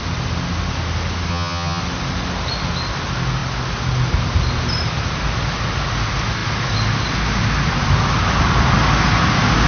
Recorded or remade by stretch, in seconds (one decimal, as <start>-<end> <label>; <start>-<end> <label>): 0.0-1.3 recorded; 1.3-1.8 remade; 1.8-9.7 recorded